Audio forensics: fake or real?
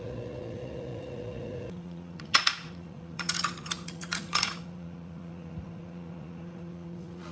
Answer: fake